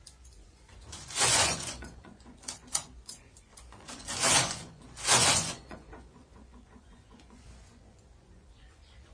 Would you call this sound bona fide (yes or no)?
no